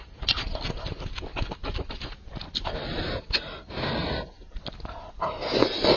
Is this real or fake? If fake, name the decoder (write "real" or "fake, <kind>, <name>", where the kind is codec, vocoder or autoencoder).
real